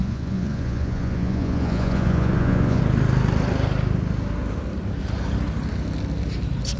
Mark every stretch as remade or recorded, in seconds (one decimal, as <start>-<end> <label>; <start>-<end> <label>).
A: 0.0-2.8 remade; 2.8-6.8 recorded